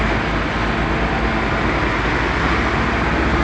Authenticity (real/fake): real